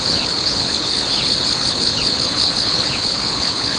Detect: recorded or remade remade